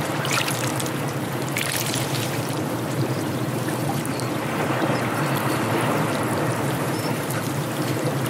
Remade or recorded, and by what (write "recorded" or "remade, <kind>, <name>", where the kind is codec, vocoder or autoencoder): remade, vocoder, BigVGAN v2